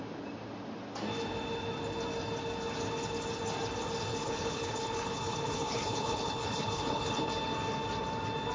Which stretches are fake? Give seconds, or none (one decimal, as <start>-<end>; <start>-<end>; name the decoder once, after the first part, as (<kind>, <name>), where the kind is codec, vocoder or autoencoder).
4.1-7.3 (codec, HILCodec)